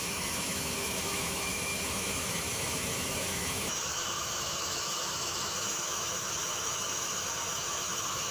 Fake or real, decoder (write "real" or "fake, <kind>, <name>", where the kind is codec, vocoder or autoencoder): fake, autoencoder, DAC-VAE